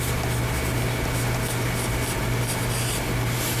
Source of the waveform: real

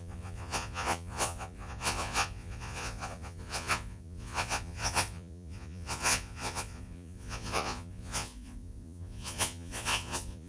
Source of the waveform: fake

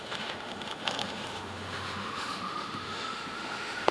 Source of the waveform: fake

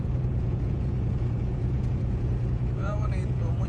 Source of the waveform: fake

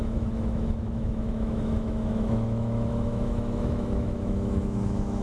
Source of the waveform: fake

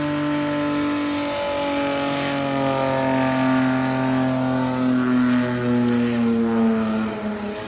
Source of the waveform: real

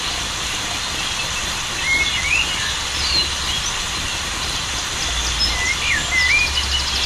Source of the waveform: real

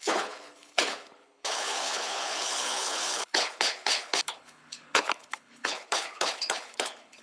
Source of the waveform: fake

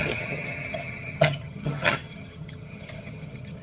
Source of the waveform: fake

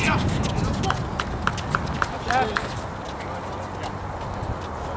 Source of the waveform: real